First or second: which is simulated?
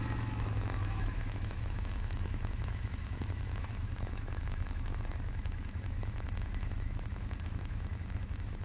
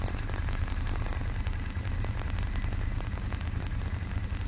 first